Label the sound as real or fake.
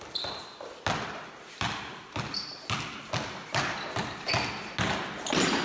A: real